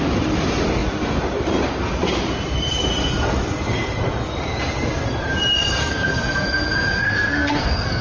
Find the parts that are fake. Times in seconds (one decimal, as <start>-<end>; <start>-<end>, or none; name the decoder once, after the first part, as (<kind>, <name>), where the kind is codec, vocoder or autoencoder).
5.8-8.0 (codec, SNAC)

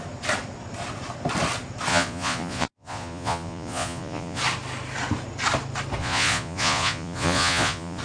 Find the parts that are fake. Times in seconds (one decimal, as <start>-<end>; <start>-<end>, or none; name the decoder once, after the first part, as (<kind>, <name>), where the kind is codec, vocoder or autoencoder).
1.9-4.4 (vocoder, Vocos); 6.0-8.0